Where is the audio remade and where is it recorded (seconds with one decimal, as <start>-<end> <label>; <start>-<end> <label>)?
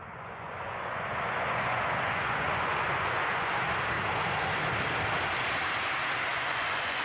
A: 0.0-3.5 remade; 3.5-6.3 recorded; 6.3-7.0 remade